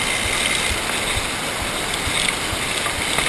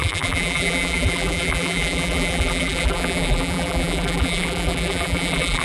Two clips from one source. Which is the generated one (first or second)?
second